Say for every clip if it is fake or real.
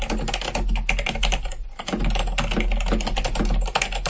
real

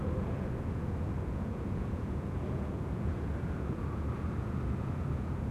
fake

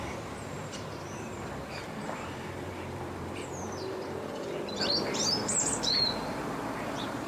fake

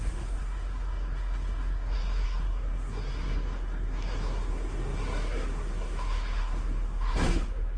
fake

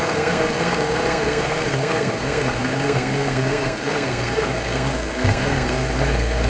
fake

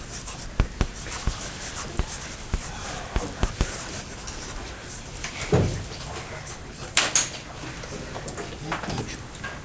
real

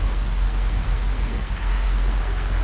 fake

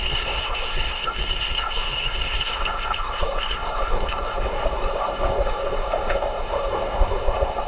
fake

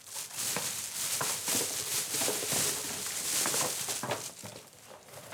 real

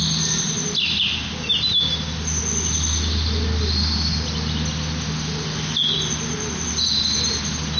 real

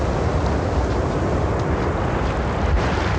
real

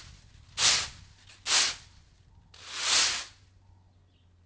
real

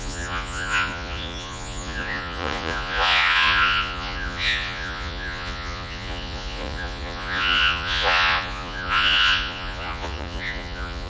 fake